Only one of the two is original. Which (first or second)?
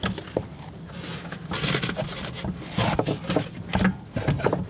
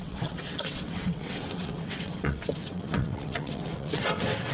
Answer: first